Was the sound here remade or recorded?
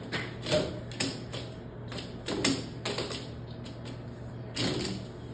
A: recorded